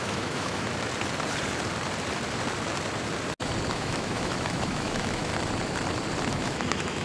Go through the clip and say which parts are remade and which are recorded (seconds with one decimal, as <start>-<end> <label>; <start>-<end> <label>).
0.0-0.7 remade; 0.7-3.7 recorded; 3.7-5.3 remade; 5.3-6.3 recorded; 6.3-7.0 remade